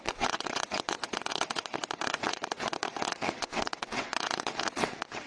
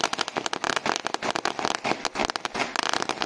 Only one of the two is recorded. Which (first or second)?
second